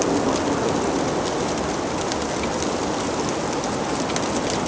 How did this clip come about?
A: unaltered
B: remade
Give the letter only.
A